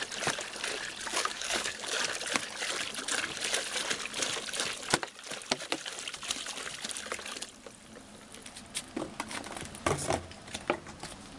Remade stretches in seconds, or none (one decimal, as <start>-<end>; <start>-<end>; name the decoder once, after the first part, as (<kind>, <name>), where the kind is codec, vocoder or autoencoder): 1.1-2.0 (codec, DAC)